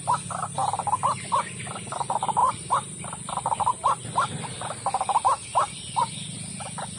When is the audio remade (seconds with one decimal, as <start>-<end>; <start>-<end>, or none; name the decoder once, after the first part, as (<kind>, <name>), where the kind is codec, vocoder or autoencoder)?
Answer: 2.4-4.9 (vocoder, BigVGAN v2); 5.5-6.5